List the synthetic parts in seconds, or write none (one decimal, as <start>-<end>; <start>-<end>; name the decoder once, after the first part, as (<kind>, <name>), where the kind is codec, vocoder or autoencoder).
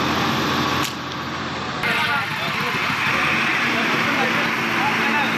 none